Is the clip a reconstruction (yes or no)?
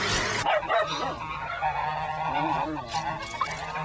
no